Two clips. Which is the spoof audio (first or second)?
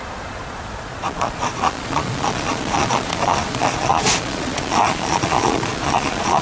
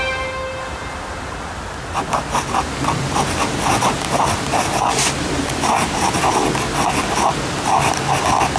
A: first